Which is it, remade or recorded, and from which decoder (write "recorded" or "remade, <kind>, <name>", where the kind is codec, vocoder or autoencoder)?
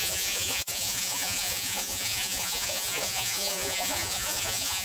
remade, vocoder, Vocos